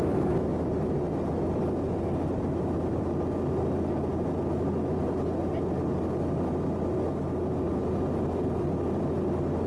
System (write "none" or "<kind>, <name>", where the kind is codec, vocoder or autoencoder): none